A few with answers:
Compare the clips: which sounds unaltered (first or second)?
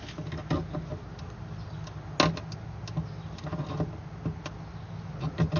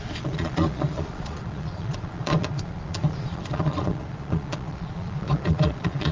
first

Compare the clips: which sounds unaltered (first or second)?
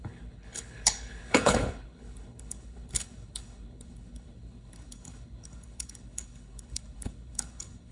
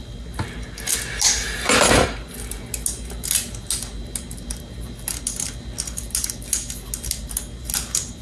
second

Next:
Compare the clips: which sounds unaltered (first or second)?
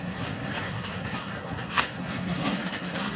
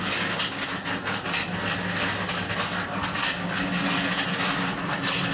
second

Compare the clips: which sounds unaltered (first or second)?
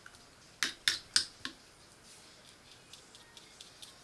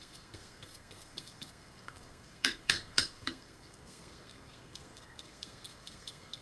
first